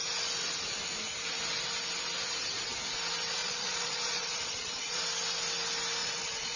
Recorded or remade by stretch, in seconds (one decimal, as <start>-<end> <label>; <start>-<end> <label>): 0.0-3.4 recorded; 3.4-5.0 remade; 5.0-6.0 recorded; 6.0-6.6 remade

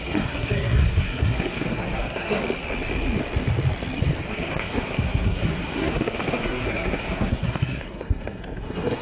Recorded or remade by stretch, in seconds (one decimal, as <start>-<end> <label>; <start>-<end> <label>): 0.0-2.4 remade; 2.4-4.2 recorded; 4.2-9.0 remade

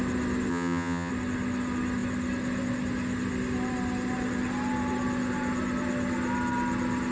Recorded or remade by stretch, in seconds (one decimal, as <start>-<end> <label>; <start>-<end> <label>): 0.0-0.5 recorded; 0.5-1.1 remade; 1.1-7.1 recorded